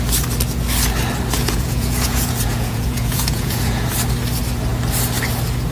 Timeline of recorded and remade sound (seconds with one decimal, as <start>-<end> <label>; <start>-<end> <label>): 0.0-1.4 recorded; 1.4-3.9 remade; 3.9-5.7 recorded